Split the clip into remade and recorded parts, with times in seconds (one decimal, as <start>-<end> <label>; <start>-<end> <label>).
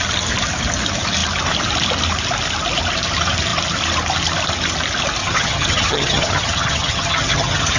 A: 0.0-5.2 recorded; 5.2-7.8 remade